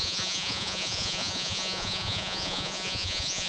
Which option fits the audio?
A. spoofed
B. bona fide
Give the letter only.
A